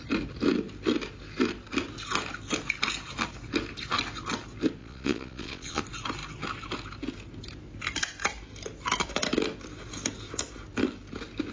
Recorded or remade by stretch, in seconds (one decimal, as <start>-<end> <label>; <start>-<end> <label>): 0.0-4.8 recorded; 4.8-5.8 remade; 5.8-11.5 recorded